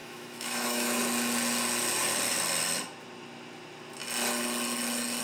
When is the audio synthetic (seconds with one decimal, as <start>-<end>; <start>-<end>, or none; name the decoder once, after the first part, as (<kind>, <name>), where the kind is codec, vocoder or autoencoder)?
0.0-1.0 (autoencoder, DAC-VAE)